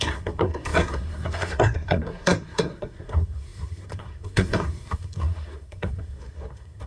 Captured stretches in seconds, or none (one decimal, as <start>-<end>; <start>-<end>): none

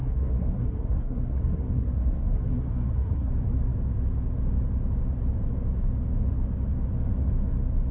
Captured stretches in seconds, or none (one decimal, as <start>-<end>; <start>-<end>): 3.3-7.9

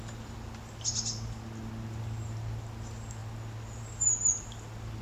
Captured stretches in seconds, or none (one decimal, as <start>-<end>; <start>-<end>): 0.0-5.0

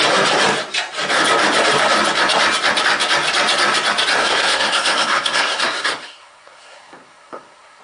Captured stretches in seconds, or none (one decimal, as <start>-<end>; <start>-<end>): 0.0-4.2

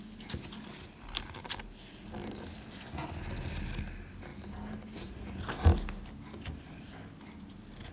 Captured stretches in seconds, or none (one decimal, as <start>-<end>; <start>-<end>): 0.0-7.9

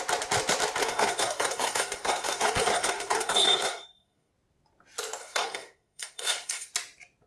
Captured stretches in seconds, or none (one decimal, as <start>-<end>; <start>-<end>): 0.0-0.8; 4.3-5.2; 6.7-7.3

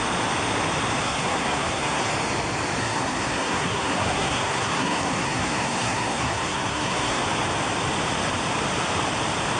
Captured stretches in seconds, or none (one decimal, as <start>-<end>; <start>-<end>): 0.0-1.0; 2.1-2.8; 7.2-9.6

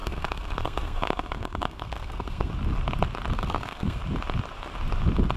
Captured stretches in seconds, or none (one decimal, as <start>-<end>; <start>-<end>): 2.5-3.3; 4.0-5.4